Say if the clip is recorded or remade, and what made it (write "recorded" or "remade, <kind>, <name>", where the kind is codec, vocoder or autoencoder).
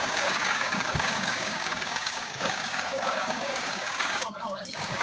remade, codec, DAC